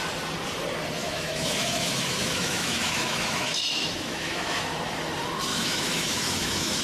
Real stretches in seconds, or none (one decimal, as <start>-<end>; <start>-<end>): 0.0-1.0; 4.6-5.5